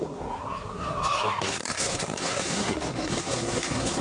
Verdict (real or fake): fake